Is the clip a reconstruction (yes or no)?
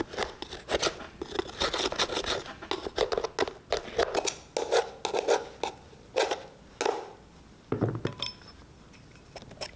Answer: no